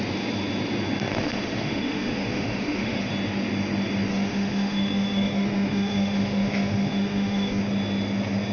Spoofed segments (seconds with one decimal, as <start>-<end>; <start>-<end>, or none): 1.1-3.1; 4.1-7.6